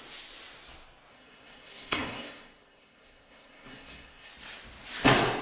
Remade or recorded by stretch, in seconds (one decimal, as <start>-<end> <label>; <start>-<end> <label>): 0.0-1.1 recorded; 1.1-4.3 remade; 4.3-5.4 recorded

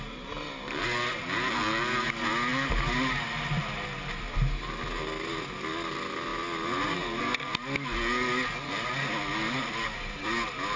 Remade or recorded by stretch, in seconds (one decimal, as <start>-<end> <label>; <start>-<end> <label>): 0.0-10.8 recorded

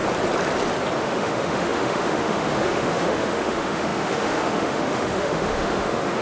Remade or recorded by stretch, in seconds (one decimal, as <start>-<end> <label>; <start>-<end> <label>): 0.0-1.0 recorded; 1.0-6.2 remade

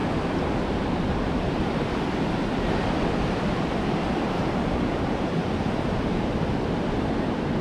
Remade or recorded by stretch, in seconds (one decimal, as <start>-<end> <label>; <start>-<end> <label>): 0.0-5.4 recorded; 5.4-6.4 remade; 6.4-7.6 recorded

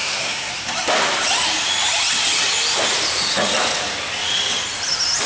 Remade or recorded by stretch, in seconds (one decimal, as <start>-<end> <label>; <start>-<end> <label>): 0.0-0.5 remade; 0.5-5.3 recorded

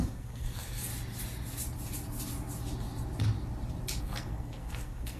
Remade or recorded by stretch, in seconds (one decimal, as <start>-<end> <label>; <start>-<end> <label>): 0.0-0.9 remade; 0.9-4.0 recorded; 4.0-5.2 remade

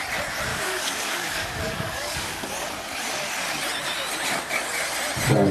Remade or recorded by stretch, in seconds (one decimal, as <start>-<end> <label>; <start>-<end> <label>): 0.0-0.5 recorded; 0.5-2.5 remade; 2.5-5.5 recorded

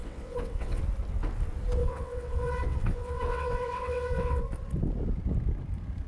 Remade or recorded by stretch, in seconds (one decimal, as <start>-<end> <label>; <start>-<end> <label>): 0.0-0.8 remade; 0.8-1.8 recorded; 1.8-4.4 remade; 4.4-6.1 recorded